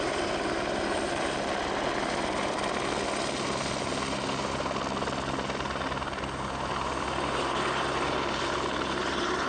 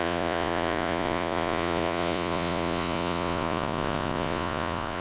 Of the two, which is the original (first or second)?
first